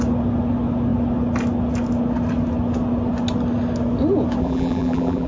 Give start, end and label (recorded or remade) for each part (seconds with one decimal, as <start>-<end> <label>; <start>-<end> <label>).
0.0-4.4 recorded; 4.4-5.3 remade